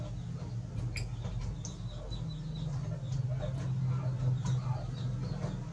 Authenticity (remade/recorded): recorded